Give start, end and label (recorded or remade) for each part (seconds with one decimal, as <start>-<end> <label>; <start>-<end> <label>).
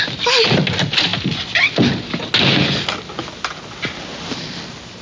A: 0.0-5.0 recorded